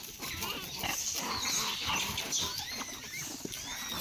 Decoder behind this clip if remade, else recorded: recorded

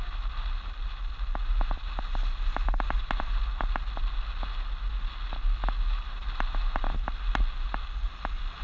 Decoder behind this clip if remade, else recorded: recorded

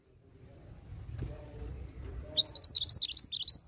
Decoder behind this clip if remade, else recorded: recorded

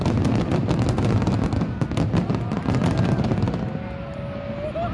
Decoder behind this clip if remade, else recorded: recorded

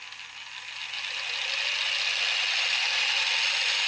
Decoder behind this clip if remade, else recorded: recorded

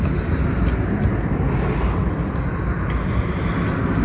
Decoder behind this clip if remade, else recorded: recorded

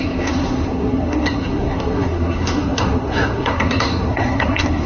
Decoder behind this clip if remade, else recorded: remade, codec, SNAC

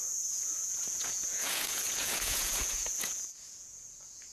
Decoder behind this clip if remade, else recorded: remade, vocoder, Vocos